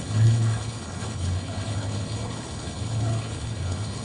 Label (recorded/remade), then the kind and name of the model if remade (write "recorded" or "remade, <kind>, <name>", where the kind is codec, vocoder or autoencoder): remade, codec, HILCodec